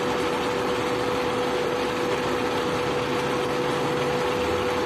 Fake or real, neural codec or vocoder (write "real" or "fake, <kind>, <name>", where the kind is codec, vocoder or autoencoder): real